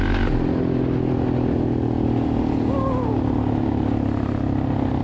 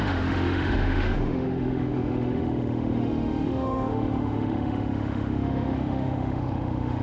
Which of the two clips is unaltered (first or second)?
first